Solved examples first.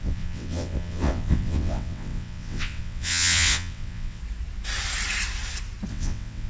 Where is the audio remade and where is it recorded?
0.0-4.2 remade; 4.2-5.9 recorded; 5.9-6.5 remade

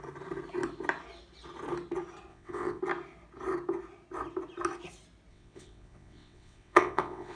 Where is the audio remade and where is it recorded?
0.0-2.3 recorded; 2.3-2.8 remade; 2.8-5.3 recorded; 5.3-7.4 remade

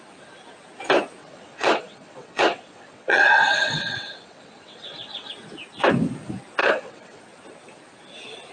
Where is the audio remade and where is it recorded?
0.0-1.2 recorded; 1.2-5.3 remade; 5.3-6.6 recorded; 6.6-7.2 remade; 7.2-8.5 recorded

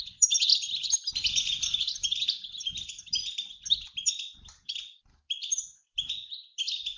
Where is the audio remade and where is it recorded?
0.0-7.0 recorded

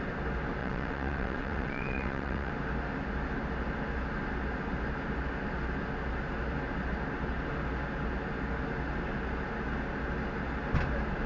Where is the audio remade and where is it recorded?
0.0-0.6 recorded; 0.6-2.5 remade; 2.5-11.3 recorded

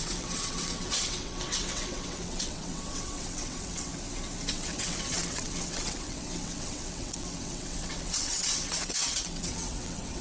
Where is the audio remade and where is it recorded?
0.0-3.9 remade; 3.9-4.5 recorded; 4.5-10.2 remade

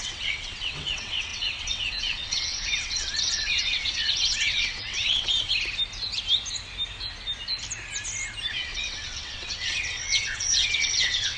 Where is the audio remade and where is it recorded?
0.0-5.5 remade; 5.5-8.5 recorded; 8.5-11.4 remade

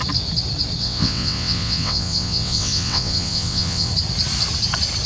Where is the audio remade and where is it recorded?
0.0-0.8 recorded; 0.8-3.9 remade; 3.9-5.1 recorded